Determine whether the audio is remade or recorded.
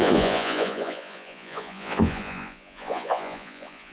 remade